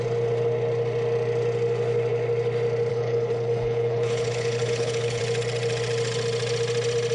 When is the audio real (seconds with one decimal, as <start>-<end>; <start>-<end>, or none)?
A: 0.0-2.9; 5.2-7.1